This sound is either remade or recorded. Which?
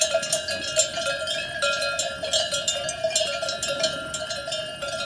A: recorded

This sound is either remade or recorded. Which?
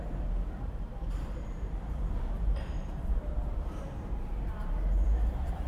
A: remade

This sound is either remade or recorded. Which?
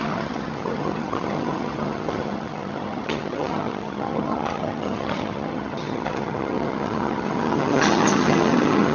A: remade